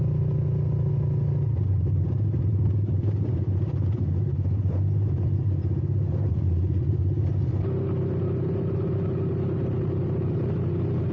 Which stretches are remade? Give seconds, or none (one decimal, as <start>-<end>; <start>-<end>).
6.3-6.9